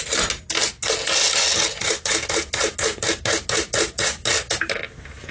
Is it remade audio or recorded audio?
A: recorded